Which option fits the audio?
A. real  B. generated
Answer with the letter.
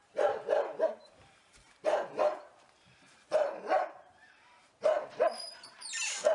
B